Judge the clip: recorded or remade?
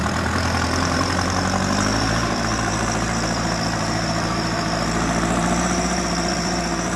remade